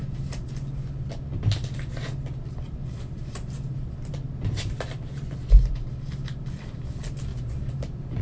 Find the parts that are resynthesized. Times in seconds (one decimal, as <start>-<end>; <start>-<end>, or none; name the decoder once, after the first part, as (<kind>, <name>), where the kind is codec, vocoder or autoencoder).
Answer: 7.3-8.2 (vocoder, BigVGAN v2)